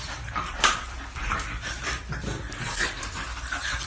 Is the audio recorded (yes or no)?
no